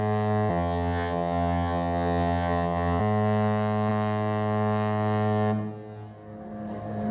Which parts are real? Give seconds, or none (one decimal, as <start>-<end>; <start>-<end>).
0.0-0.5; 3.0-7.1

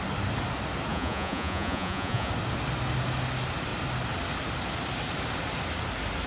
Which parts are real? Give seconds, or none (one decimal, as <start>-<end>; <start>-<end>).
0.0-0.9; 2.3-6.3

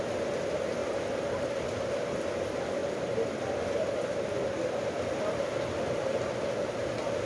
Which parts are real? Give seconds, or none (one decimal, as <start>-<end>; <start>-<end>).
0.0-7.3

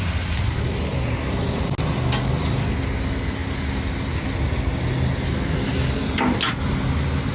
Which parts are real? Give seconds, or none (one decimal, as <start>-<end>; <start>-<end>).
0.0-0.9; 1.6-7.3

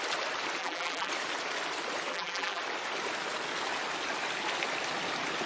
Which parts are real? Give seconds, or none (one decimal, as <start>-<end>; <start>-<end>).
0.0-0.6; 1.1-2.1; 2.6-5.5

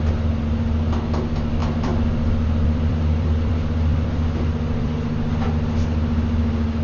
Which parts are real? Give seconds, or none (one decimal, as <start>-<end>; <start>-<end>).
0.0-1.6; 3.5-3.9; 5.8-6.8

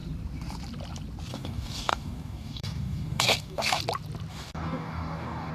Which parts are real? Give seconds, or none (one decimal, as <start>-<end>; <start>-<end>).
0.0-1.3; 3.8-4.3